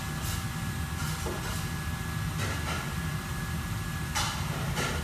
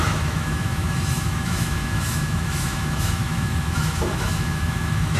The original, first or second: first